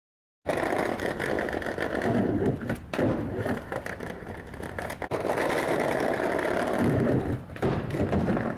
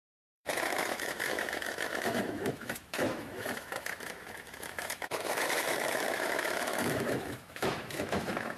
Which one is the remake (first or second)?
second